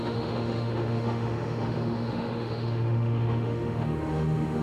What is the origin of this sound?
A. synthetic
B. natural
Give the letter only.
A